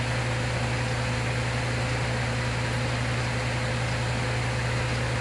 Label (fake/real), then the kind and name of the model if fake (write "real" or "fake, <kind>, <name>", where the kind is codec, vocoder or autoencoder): real